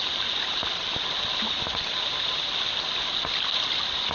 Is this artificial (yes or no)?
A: no